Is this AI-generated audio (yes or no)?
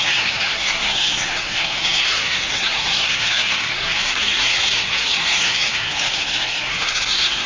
yes